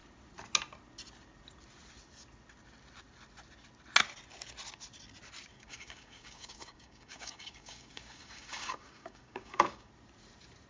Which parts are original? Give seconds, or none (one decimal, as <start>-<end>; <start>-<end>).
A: 0.0-5.5; 9.9-10.7